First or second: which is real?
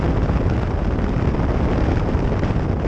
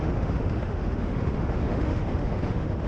first